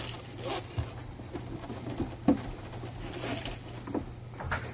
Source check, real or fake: real